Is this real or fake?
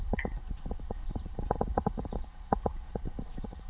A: fake